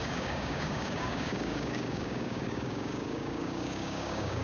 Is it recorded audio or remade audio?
remade